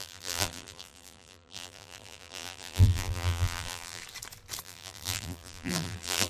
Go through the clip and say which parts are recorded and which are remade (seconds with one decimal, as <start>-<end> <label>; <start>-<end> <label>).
0.0-4.0 remade; 4.0-4.6 recorded; 4.6-6.3 remade